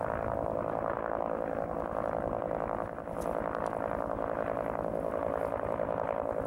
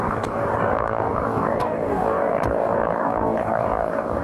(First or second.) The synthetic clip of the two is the second